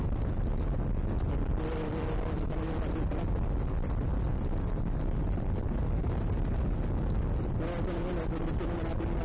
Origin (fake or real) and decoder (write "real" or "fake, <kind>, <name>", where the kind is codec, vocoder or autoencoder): real